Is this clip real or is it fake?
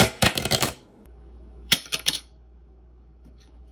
fake